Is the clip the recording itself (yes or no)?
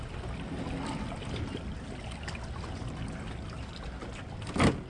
yes